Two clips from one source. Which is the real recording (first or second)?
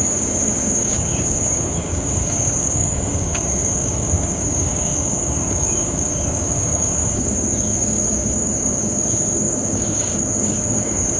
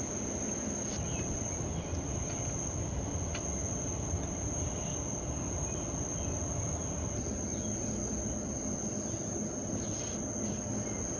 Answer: second